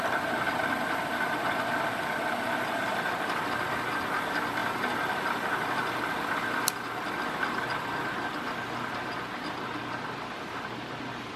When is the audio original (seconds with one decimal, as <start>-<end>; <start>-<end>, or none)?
0.0-11.4